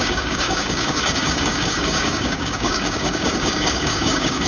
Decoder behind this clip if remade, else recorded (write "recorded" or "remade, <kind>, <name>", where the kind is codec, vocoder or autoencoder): remade, codec, DAC